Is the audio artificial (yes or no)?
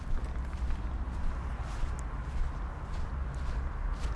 no